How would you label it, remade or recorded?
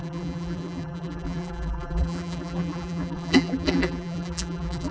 remade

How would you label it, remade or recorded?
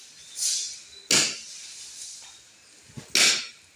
recorded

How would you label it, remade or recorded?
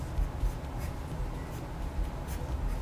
recorded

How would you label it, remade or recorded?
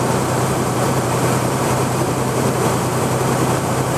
remade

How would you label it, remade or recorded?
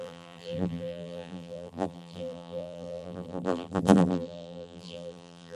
remade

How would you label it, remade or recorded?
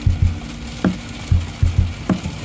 recorded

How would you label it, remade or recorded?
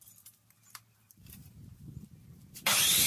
remade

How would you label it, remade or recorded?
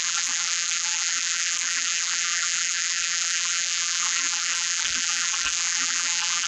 remade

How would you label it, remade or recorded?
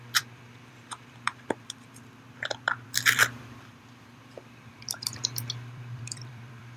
remade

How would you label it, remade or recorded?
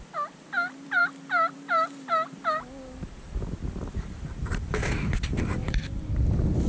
remade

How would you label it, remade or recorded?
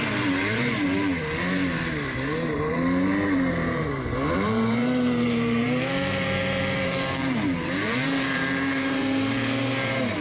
remade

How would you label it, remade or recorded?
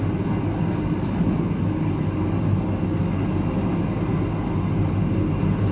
recorded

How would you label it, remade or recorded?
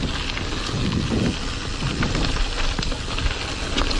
recorded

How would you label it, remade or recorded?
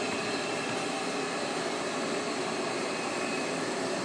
remade